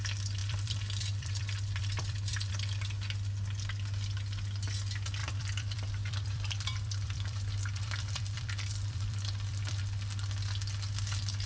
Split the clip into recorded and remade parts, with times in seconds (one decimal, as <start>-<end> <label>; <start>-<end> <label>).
0.0-0.4 recorded; 0.4-2.5 remade; 2.5-5.2 recorded; 5.2-9.8 remade; 9.8-11.5 recorded